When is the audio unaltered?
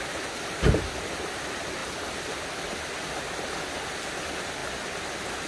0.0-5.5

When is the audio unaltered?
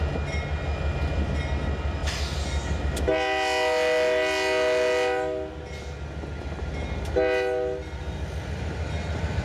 0.0-9.4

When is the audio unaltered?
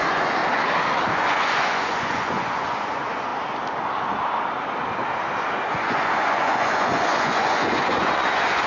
0.4-1.1; 3.3-5.7